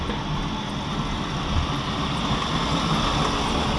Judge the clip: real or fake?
real